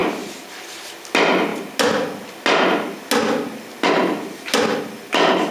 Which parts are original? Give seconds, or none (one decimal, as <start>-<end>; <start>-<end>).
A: 0.6-5.5